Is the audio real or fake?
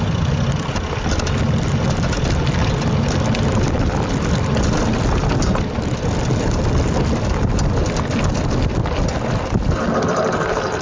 real